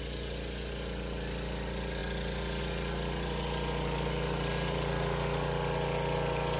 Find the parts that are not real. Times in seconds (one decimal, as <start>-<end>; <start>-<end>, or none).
none